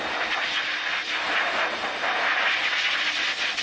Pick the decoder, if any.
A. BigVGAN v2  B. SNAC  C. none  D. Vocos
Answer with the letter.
C